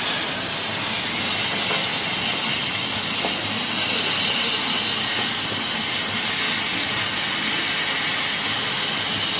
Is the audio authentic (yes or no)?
yes